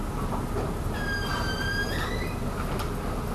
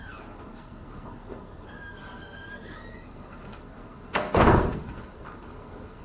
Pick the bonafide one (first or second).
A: first